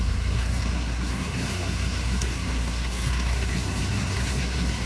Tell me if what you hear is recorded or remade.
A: remade